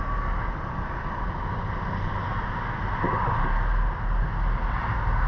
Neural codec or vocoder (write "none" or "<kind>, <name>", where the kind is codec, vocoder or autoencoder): none